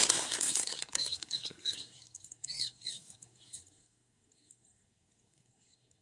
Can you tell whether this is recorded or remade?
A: remade